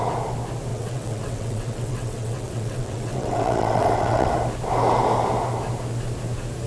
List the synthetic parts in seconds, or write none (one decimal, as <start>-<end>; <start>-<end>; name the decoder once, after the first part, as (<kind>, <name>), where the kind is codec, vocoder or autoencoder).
0.7-4.3 (vocoder, WaveNeXt)